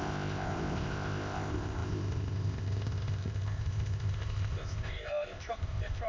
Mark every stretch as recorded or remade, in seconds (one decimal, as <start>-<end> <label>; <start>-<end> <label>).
0.0-6.1 remade